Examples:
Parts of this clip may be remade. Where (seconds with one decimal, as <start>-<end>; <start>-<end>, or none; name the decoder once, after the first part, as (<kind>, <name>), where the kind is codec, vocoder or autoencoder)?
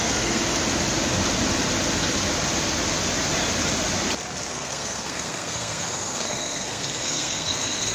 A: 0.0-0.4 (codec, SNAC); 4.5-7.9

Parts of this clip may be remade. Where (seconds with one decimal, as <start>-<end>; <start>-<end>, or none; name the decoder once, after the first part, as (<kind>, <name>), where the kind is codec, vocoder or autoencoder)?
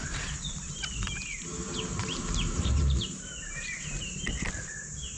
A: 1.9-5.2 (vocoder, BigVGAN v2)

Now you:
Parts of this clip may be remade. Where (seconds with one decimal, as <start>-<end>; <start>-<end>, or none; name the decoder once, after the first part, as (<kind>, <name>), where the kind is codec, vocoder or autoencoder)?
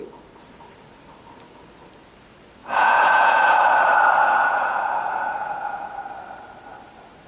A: 2.6-3.7 (vocoder, Vocos); 4.2-6.0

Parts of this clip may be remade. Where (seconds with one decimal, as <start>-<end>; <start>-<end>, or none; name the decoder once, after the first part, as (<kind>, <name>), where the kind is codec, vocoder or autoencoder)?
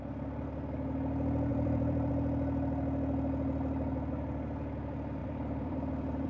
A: 1.5-2.1 (vocoder, BigVGAN v2); 5.2-6.3